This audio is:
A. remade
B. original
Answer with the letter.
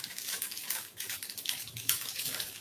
A